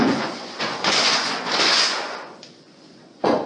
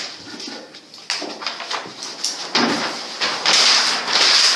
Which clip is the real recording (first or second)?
second